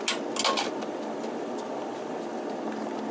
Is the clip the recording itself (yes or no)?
yes